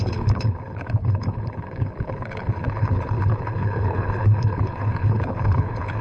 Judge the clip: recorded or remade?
remade